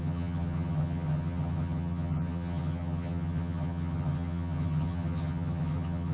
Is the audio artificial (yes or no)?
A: yes